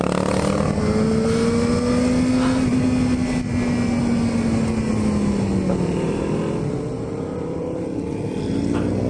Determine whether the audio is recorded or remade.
recorded